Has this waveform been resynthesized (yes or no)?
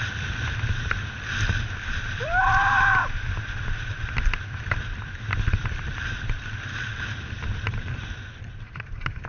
yes